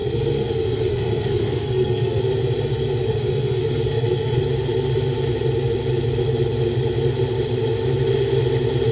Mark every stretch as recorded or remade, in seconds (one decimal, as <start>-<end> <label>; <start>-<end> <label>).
0.0-2.2 remade; 2.2-3.1 recorded; 3.1-4.4 remade; 4.4-8.9 recorded